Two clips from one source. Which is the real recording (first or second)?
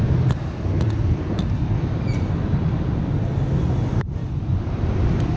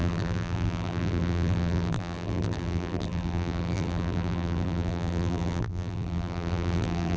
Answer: first